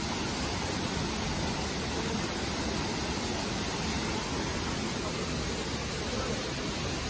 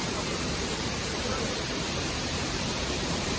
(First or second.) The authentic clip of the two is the first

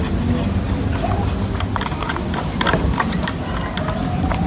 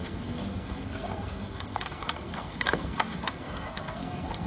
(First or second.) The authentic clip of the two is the first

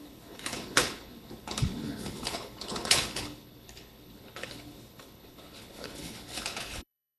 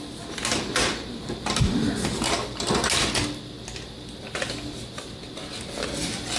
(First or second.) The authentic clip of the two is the second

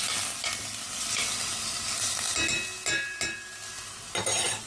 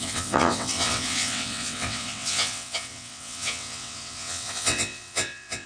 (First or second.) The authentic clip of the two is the first